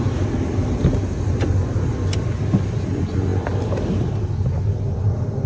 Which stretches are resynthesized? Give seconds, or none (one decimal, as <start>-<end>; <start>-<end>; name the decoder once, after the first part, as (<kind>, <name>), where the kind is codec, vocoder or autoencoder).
none